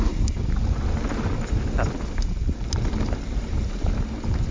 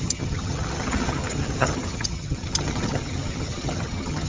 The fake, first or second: second